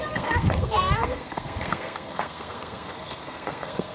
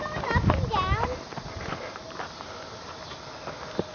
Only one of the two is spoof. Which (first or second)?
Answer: first